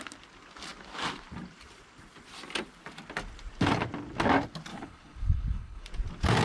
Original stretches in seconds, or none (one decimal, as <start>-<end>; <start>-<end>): 0.0-4.7; 5.9-6.4